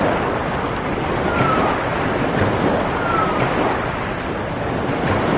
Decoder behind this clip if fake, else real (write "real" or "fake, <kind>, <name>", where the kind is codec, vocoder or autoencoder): real